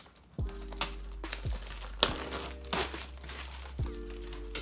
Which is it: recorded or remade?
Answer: recorded